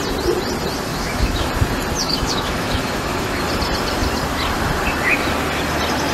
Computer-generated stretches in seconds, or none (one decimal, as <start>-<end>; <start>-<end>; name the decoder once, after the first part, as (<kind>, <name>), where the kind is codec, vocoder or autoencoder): 0.9-1.5 (autoencoder, DAC-VAE); 2.0-3.4